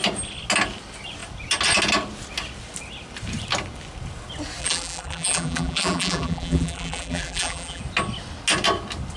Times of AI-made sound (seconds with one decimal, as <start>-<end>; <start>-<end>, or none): 4.6-7.8